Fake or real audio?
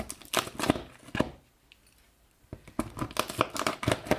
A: real